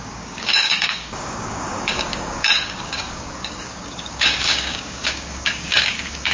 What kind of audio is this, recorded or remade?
remade